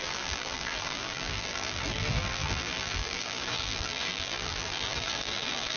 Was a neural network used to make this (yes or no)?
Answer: yes